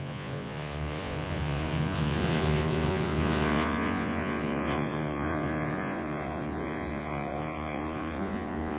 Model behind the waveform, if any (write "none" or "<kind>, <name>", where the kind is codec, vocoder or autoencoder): vocoder, Vocos